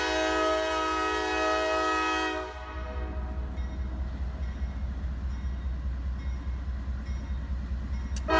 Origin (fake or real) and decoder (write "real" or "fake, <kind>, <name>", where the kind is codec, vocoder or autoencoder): real